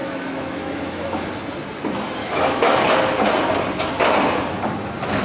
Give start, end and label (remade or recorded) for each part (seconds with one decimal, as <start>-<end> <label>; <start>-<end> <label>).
0.0-1.3 remade; 1.3-2.2 recorded; 2.2-2.8 remade; 2.8-5.2 recorded